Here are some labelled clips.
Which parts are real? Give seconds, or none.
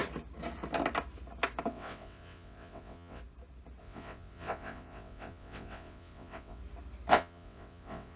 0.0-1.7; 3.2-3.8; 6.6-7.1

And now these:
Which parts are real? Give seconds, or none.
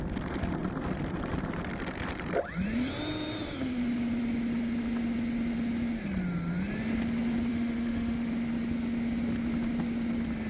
0.0-7.5; 8.3-10.5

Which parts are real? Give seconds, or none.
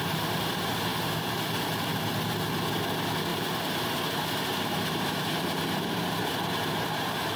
0.0-0.9; 1.8-3.3